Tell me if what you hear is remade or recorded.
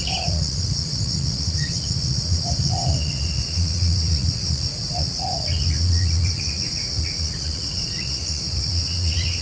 remade